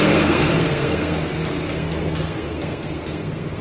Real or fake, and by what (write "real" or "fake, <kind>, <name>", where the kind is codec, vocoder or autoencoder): fake, codec, SNAC